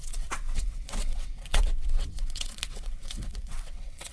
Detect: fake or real fake